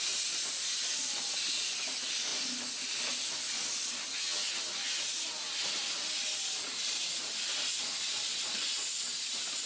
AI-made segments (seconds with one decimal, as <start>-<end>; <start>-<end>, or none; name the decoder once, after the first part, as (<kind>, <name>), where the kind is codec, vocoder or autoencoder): 4.1-5.0 (vocoder, HiFi-GAN)